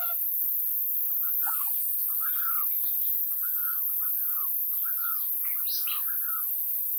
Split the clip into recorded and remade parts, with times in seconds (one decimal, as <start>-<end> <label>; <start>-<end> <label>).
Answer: 0.0-3.0 recorded; 3.0-3.8 remade; 3.8-7.0 recorded